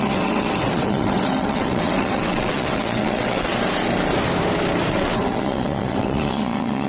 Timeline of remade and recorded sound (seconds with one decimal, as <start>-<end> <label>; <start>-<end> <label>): 0.0-3.5 remade; 3.5-4.9 recorded; 4.9-6.9 remade